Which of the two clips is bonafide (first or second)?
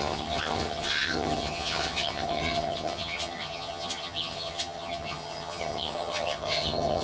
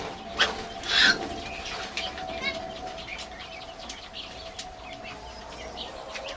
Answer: second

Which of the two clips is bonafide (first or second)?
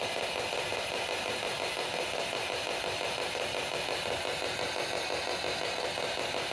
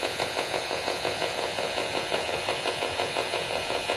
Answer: first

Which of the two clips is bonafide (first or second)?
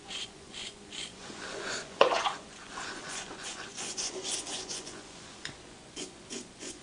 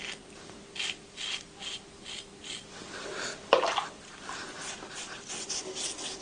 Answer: second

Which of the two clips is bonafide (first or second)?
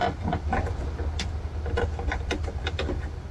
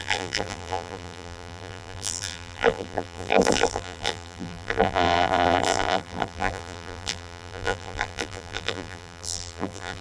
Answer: first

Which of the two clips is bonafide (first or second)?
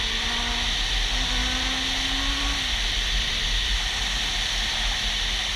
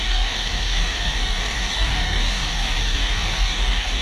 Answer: first